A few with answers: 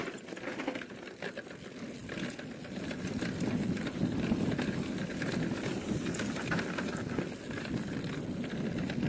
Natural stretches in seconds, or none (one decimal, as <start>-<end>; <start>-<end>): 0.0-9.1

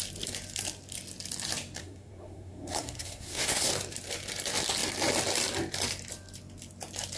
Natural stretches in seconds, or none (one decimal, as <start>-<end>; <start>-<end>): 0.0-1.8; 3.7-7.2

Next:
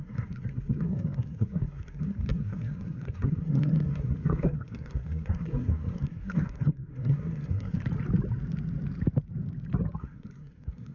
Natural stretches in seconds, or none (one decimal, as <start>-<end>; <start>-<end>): 7.8-10.0